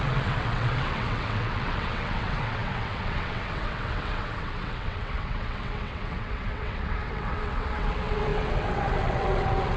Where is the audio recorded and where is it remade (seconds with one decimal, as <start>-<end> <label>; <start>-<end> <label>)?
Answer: 0.0-9.8 remade

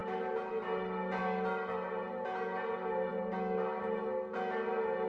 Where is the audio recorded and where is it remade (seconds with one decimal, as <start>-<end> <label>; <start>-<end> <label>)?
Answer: 0.0-5.1 recorded

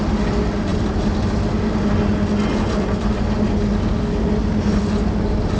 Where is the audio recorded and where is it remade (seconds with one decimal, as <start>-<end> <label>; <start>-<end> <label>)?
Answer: 0.0-5.6 recorded

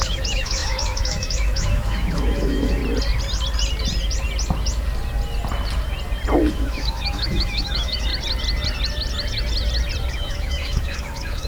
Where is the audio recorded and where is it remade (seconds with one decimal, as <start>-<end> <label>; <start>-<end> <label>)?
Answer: 0.0-2.8 remade; 2.8-6.5 recorded; 6.5-8.1 remade; 8.1-10.1 recorded; 10.1-11.5 remade

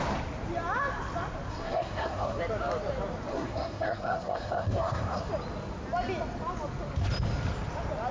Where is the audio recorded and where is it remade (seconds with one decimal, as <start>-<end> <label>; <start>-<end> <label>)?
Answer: 0.0-1.5 recorded; 1.5-2.4 remade; 2.4-3.3 recorded; 3.3-5.3 remade; 5.3-8.1 recorded

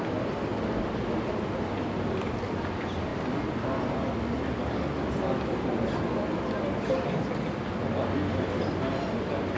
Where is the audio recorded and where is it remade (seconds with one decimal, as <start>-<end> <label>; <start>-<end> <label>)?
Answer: 0.0-9.6 recorded

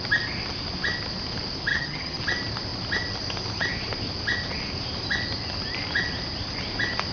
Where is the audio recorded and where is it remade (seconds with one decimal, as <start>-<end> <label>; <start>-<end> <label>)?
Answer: 0.0-1.7 recorded; 1.7-2.2 remade; 2.2-7.1 recorded

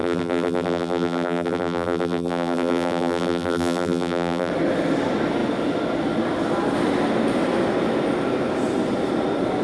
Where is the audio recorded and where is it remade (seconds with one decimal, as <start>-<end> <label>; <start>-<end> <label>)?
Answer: 0.0-4.5 remade; 4.5-9.6 recorded